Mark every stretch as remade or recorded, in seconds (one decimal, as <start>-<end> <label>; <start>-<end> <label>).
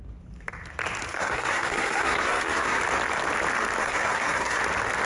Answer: 0.0-1.1 recorded; 1.1-2.8 remade; 2.8-3.8 recorded; 3.8-4.6 remade; 4.6-5.1 recorded